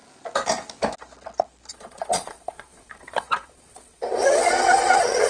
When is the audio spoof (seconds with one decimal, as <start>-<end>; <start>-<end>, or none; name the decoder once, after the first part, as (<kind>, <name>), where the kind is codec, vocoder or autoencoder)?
1.7-5.3 (vocoder, Vocos)